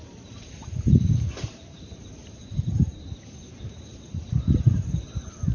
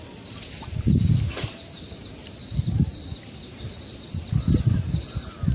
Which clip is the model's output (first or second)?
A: first